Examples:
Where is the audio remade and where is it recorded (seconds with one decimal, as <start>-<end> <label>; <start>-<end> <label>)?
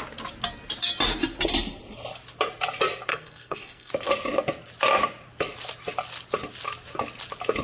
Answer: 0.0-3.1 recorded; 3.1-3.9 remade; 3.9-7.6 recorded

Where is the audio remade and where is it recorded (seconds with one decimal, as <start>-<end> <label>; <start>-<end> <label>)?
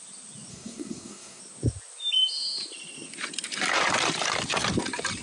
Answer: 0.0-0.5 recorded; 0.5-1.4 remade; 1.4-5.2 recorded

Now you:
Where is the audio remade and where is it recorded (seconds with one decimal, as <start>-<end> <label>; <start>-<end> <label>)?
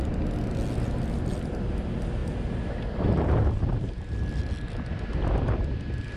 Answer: 0.0-6.2 recorded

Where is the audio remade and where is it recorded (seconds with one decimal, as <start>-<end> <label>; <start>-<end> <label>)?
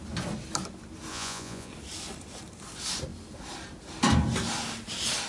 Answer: 0.0-1.1 recorded; 1.1-1.7 remade; 1.7-5.3 recorded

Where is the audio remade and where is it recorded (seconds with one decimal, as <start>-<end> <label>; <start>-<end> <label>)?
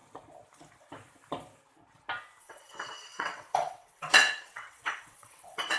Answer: 0.0-2.4 recorded; 2.4-5.8 remade